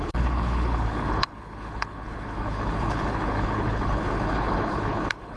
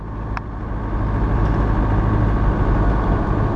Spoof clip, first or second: first